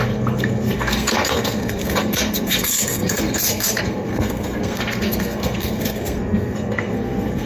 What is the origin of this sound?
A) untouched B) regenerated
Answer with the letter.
B